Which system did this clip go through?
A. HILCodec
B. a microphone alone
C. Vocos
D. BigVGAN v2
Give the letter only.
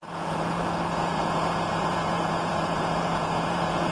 C